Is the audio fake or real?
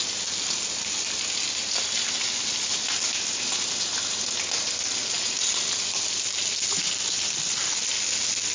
real